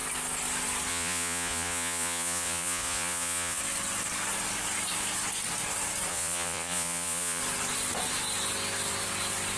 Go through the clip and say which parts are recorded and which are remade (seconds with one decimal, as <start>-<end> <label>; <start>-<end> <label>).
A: 0.0-0.9 recorded; 0.9-3.6 remade; 3.6-6.1 recorded; 6.1-7.4 remade; 7.4-9.6 recorded